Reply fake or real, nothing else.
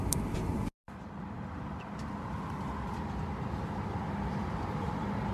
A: real